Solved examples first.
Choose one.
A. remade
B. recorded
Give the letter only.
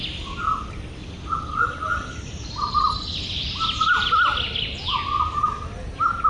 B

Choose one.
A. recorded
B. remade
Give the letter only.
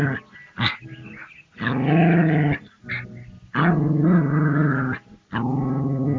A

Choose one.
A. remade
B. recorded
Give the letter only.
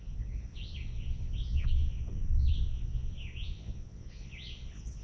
A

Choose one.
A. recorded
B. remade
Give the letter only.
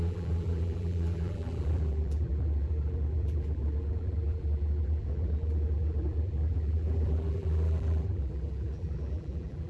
B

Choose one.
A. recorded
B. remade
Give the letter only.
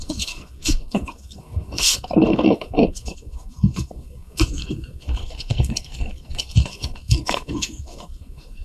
B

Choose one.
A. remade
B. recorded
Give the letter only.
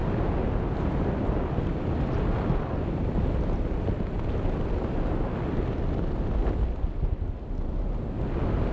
B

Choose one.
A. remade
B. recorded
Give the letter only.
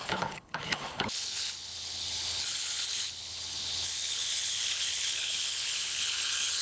A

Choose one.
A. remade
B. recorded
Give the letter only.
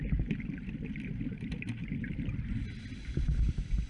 B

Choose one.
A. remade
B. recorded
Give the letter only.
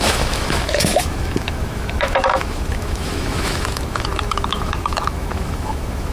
A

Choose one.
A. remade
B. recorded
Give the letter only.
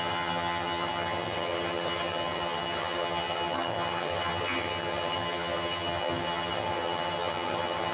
A